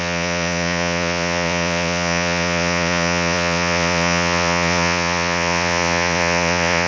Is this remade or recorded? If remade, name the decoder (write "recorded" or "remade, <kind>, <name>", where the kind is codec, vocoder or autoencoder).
remade, vocoder, Vocos